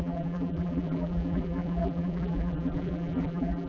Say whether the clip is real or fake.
fake